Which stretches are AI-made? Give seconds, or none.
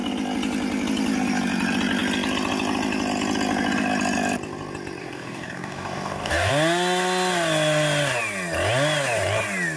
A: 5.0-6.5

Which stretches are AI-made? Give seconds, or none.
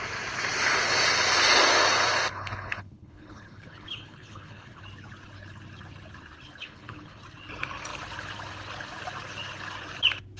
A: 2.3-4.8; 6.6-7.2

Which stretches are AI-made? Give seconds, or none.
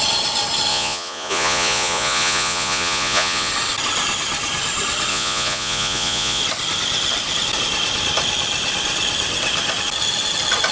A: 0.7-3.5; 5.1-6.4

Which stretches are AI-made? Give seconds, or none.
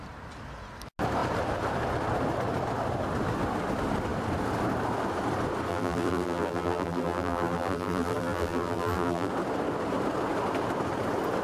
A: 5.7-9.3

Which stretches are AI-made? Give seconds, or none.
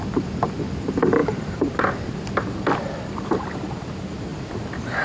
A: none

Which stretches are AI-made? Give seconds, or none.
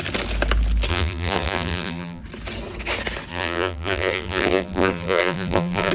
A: 0.9-2.2; 3.3-5.9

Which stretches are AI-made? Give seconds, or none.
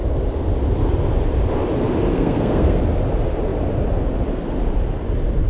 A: 2.1-2.8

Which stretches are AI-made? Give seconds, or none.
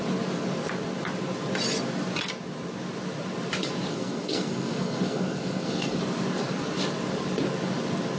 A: 3.9-6.0